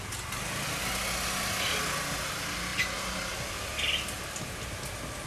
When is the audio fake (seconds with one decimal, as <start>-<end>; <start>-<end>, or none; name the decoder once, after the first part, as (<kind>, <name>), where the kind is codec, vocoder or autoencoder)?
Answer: none